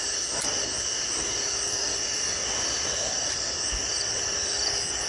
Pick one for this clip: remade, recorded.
remade